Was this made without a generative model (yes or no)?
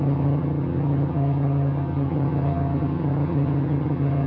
no